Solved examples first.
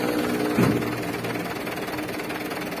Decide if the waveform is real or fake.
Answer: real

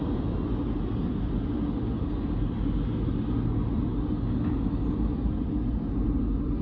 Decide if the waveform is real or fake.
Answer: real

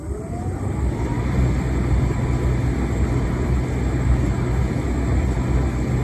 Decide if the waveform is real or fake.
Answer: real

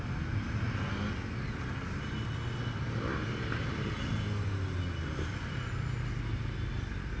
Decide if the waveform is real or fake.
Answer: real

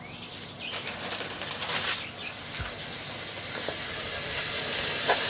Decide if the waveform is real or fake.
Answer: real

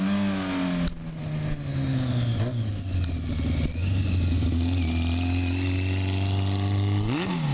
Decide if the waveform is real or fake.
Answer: real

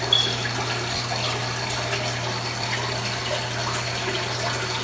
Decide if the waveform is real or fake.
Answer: real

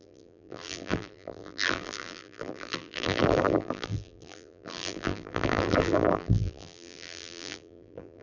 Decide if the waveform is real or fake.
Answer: fake